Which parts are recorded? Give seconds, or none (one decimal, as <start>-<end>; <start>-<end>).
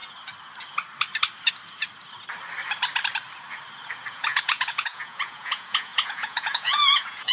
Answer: 0.0-4.1